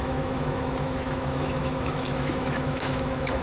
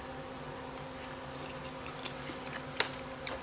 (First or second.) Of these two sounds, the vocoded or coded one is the first